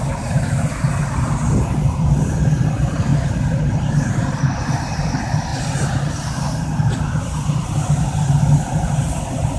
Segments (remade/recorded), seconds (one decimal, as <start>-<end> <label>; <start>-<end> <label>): 0.0-3.1 recorded; 3.1-4.5 remade; 4.5-5.5 recorded; 5.5-6.0 remade; 6.0-9.6 recorded